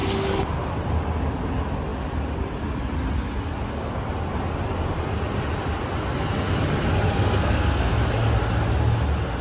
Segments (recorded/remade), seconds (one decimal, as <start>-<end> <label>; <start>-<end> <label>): 0.0-7.1 recorded; 7.1-8.0 remade; 8.0-9.4 recorded